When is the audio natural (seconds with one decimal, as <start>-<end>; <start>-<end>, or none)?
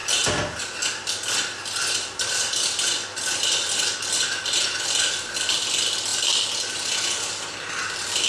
0.0-8.3